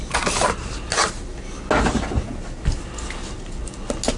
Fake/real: real